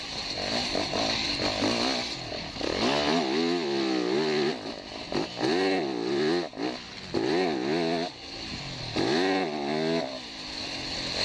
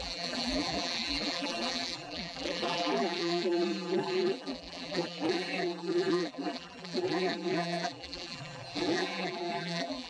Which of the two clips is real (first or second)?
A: first